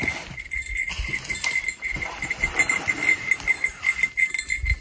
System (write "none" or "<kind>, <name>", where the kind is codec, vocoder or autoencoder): none